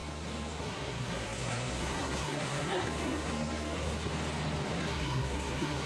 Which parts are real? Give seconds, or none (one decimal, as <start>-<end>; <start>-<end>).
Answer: 4.1-4.7